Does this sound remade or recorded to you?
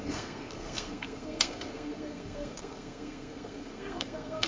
remade